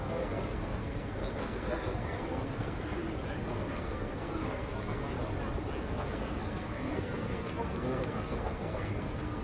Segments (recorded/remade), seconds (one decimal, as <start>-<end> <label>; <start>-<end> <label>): 0.0-3.0 remade; 3.0-3.5 recorded; 3.5-5.0 remade; 5.0-5.8 recorded; 5.8-9.4 remade